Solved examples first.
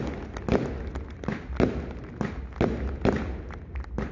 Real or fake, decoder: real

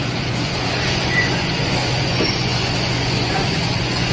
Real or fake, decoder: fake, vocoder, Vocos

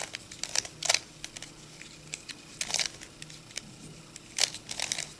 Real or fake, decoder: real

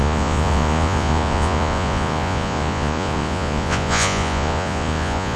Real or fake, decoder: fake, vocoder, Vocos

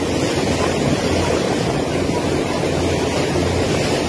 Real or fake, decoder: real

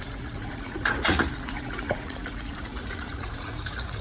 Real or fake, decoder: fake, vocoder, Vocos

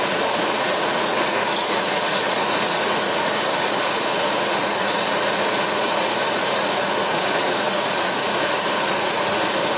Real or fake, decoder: fake, vocoder, Vocos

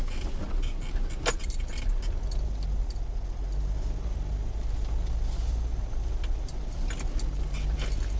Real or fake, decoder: real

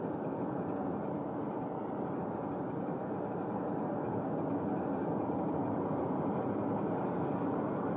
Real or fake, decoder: real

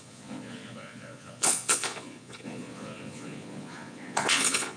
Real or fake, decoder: fake, vocoder, Vocos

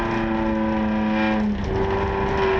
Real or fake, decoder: real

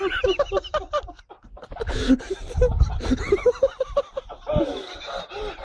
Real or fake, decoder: real